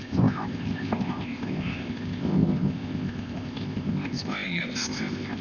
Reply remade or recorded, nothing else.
remade